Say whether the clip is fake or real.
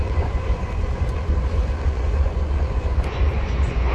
fake